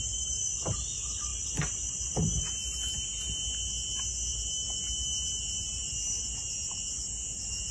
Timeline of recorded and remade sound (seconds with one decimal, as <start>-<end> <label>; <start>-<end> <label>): 0.0-7.7 recorded